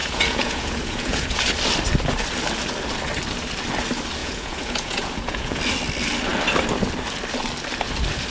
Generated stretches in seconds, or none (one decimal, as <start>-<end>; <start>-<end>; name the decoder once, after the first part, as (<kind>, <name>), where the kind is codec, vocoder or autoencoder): 0.0-1.4 (vocoder, Vocos); 4.2-5.6